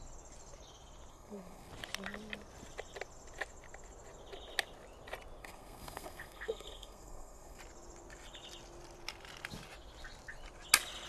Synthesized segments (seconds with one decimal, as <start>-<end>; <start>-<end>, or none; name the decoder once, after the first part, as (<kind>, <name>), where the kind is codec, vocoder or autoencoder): 1.1-1.7 (codec, SNAC); 5.4-7.6